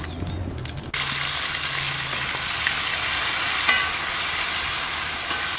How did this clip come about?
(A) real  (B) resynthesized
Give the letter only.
A